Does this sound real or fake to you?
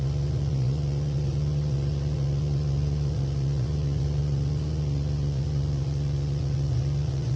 fake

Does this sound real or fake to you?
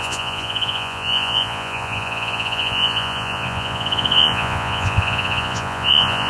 fake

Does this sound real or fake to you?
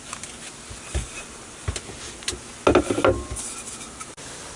real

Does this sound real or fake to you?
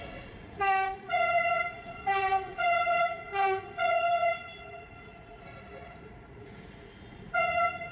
fake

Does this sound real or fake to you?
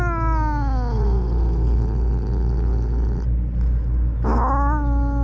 real